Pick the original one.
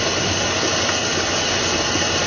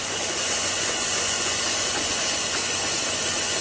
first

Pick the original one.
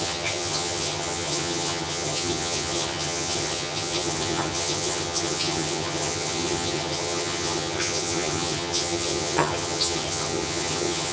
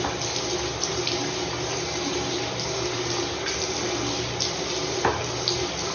second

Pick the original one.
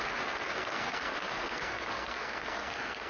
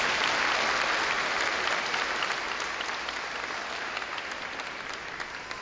second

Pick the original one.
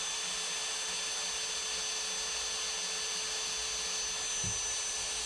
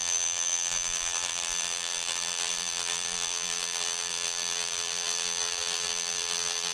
first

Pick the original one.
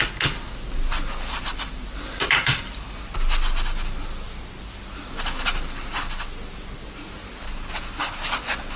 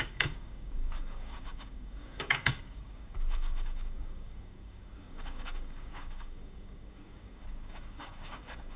first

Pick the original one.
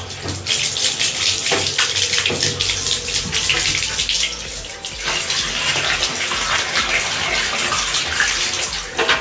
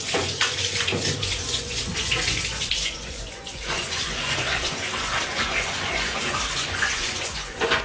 first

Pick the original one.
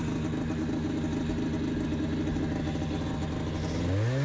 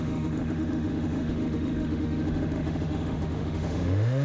first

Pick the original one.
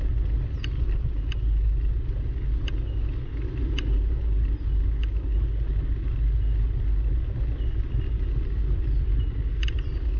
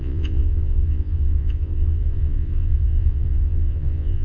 first